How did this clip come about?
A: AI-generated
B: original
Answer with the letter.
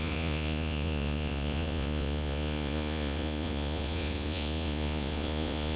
A